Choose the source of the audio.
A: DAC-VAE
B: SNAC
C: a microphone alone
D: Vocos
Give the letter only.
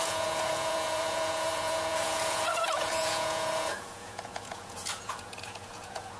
D